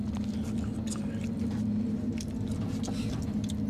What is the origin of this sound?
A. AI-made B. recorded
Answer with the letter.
B